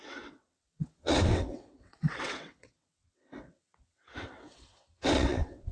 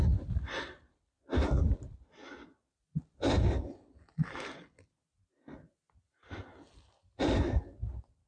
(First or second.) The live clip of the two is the second